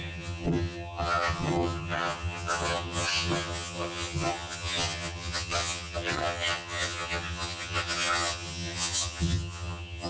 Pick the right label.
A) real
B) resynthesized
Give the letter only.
B